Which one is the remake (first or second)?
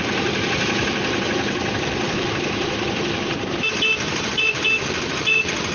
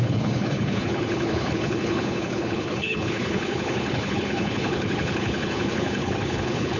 second